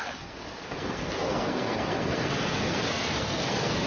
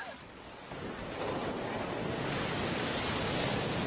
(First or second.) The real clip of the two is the second